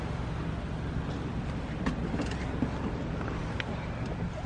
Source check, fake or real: real